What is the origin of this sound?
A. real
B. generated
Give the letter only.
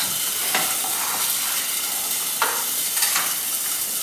A